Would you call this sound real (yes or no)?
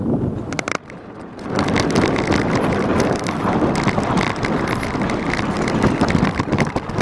yes